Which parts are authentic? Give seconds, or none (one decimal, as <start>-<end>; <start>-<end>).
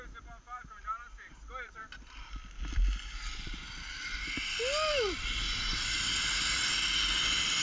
0.0-7.6